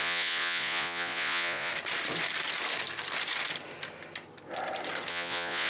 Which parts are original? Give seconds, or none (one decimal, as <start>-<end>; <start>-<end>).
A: 1.7-5.1